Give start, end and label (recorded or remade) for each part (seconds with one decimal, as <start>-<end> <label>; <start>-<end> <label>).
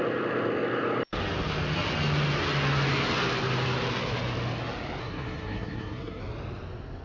0.0-5.0 recorded; 5.0-6.2 remade; 6.2-7.0 recorded